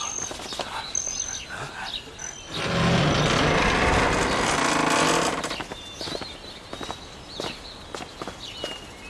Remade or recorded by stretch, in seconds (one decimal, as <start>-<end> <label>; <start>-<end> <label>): 0.0-9.1 recorded